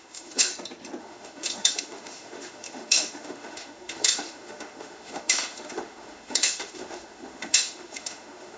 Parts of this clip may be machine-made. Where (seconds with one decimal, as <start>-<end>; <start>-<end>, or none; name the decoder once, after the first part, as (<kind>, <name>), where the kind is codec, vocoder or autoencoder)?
0.0-0.5 (autoencoder, DAC-VAE); 1.0-8.6